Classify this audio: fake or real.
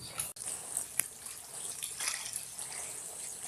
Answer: real